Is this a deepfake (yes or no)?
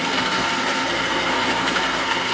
yes